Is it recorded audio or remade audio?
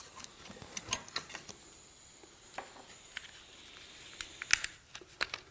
recorded